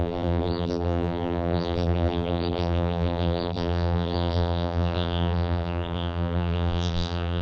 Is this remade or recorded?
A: remade